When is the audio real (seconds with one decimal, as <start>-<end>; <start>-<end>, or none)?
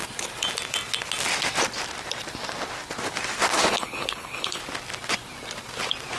0.0-3.7; 4.6-6.2